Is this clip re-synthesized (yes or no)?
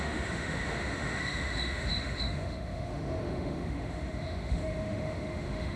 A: yes